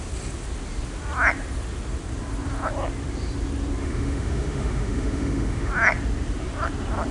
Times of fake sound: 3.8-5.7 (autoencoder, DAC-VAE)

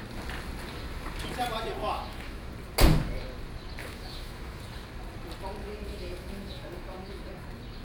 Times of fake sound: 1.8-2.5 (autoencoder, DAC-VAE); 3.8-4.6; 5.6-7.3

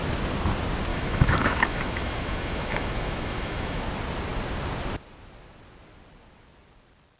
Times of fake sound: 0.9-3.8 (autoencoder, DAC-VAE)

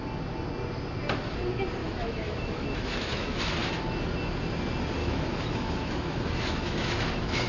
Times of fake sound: 1.8-3.4 (autoencoder, DAC-VAE); 5.0-7.5

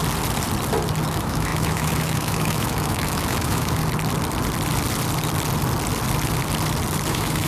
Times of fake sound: 1.1-3.8 (autoencoder, DAC-VAE); 7.1-7.5

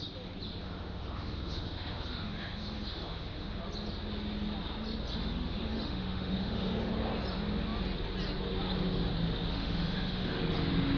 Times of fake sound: 0.6-3.6 (autoencoder, DAC-VAE); 5.2-6.9; 9.5-10.3